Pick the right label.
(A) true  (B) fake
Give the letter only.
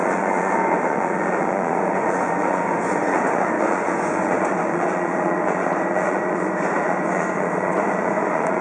B